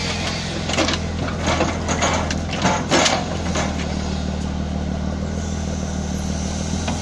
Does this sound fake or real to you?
real